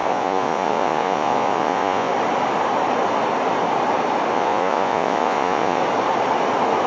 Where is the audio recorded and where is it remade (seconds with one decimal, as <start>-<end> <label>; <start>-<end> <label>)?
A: 0.0-2.1 remade; 2.1-4.3 recorded; 4.3-5.8 remade; 5.8-6.9 recorded